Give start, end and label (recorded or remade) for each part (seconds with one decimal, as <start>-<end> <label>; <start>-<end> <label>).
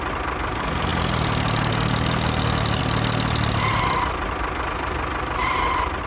0.0-6.1 recorded